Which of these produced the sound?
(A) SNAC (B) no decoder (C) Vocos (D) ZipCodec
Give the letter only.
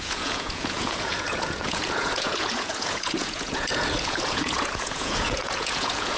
C